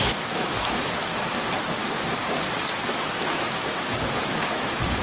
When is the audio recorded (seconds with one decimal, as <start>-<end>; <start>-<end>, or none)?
1.1-2.9